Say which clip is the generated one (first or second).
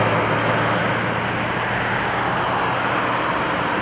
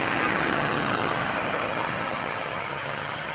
second